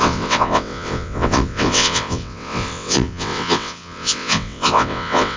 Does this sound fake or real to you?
fake